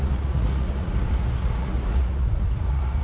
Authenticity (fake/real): fake